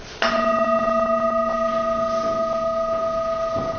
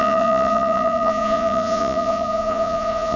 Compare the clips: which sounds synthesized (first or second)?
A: second